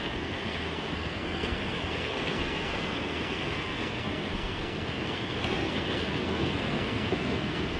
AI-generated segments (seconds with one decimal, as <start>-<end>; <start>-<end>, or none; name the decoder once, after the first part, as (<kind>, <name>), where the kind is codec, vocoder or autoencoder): 0.0-7.8 (codec, SNAC)